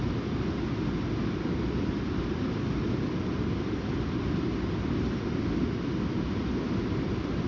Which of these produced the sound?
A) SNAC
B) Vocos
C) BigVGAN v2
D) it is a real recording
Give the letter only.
D